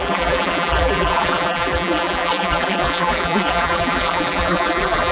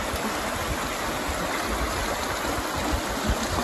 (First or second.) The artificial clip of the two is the first